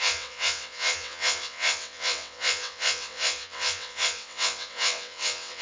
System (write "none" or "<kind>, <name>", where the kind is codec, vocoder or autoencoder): vocoder, WaveNeXt